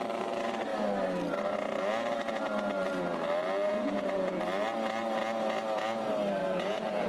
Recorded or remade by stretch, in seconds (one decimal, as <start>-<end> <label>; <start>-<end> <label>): 0.0-3.7 recorded; 3.7-4.4 remade; 4.4-6.4 recorded; 6.4-7.1 remade